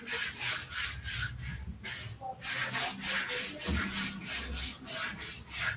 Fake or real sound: real